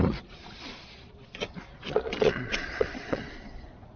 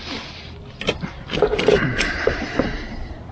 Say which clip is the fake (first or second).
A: first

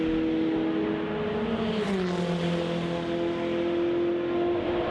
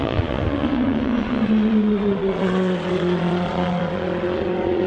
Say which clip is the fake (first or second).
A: second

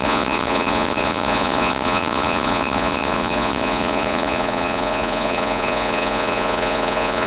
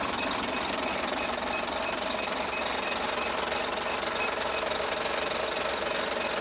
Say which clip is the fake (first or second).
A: first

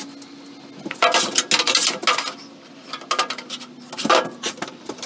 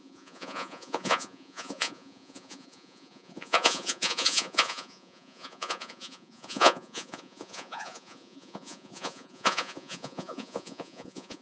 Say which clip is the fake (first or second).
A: second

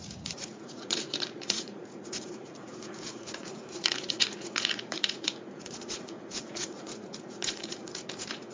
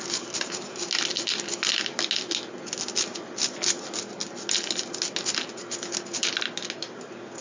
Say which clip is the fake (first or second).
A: first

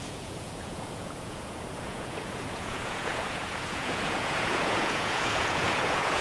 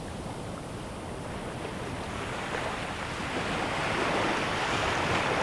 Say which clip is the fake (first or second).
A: first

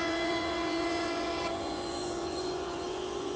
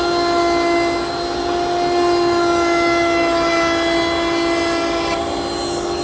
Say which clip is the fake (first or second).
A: first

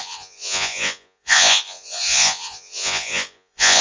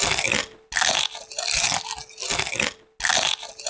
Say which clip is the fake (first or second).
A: first